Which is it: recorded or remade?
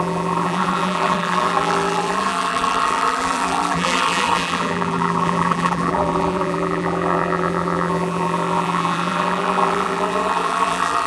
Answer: remade